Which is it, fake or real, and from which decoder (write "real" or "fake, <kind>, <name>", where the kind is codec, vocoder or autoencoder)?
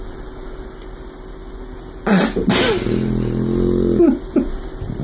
real